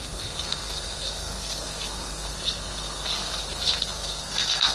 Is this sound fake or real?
fake